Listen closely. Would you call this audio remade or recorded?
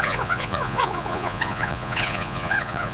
remade